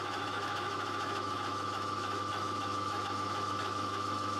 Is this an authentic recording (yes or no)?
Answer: no